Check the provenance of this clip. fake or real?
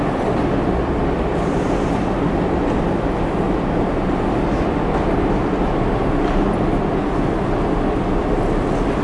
real